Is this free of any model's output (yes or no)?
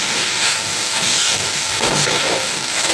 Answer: no